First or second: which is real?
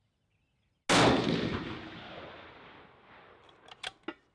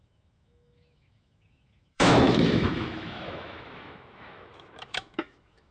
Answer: first